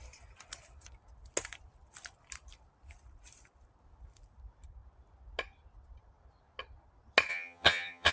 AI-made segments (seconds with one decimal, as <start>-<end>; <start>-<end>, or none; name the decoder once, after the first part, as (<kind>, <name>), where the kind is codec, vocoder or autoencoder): 7.3-8.1 (vocoder, HiFi-GAN)